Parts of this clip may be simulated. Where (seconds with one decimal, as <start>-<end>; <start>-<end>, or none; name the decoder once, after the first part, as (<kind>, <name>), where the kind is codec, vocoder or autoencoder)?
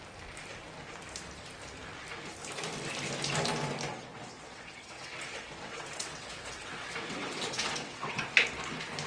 3.9-8.2 (vocoder, WaveNeXt)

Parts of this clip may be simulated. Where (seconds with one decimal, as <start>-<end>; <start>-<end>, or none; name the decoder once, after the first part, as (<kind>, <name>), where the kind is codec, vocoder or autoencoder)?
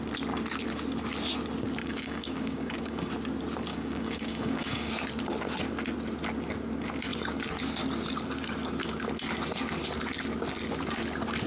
1.8-3.1 (codec, DAC); 3.7-4.9